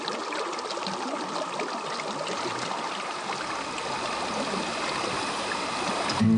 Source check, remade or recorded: recorded